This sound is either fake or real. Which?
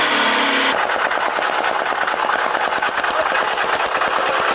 real